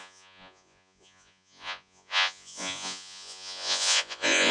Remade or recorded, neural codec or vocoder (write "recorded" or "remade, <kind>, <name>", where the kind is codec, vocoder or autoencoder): remade, vocoder, Vocos